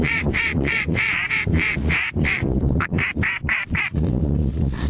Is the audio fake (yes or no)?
yes